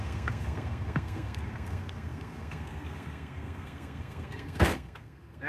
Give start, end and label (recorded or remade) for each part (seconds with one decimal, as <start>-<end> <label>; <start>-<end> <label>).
0.0-5.5 remade